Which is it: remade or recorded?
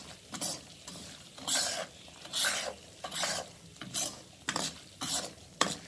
recorded